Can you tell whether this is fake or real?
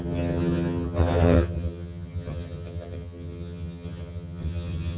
fake